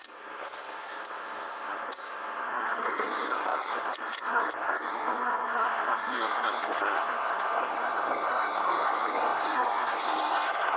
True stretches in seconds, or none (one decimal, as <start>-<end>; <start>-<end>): none